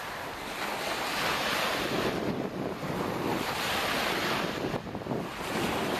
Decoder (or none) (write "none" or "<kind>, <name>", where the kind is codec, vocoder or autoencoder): none